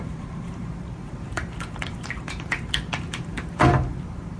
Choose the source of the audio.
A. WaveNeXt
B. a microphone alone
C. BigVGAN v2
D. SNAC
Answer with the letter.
C